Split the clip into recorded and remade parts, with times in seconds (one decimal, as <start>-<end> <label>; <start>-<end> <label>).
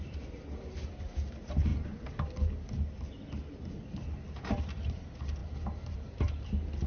0.0-1.7 remade; 1.7-4.4 recorded; 4.4-6.9 remade